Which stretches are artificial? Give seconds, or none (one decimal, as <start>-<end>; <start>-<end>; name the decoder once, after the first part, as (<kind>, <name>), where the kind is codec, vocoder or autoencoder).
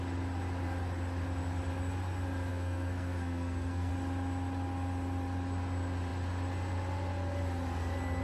2.5-3.9 (codec, SNAC)